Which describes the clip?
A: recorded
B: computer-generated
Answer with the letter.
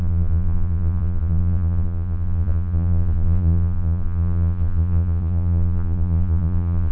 B